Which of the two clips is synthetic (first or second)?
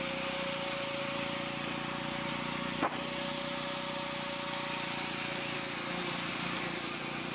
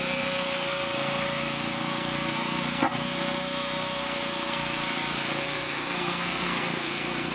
second